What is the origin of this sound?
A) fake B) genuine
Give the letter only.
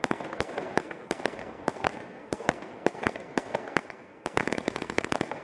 A